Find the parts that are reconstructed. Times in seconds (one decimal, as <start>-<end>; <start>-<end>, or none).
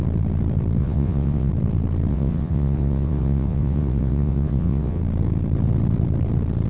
0.8-1.5; 2.1-5.0